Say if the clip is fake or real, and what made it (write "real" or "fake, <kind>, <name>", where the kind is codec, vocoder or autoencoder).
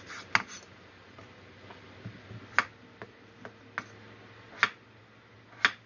real